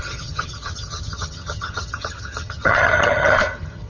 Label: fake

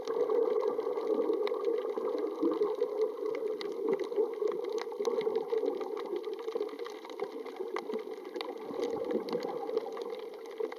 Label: real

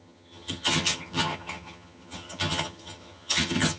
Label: fake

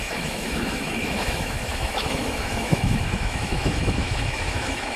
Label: fake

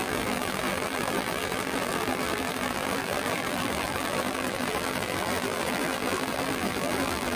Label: fake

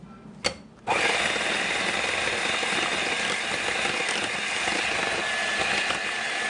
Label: real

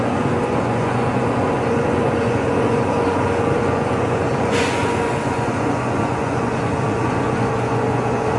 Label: fake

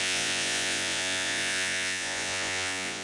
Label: fake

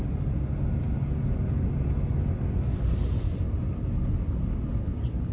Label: real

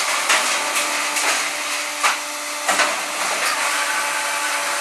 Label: real